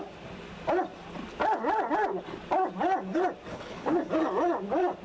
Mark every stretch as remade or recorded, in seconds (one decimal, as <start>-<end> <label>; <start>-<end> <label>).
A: 0.0-3.5 recorded; 3.5-4.1 remade; 4.1-5.0 recorded